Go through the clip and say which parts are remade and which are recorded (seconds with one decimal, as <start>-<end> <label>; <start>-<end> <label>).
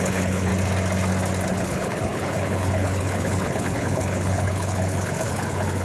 0.0-0.5 remade; 0.5-1.5 recorded; 1.5-5.8 remade